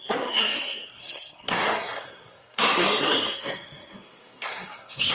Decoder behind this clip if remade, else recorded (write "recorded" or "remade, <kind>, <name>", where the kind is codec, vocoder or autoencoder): remade, codec, SNAC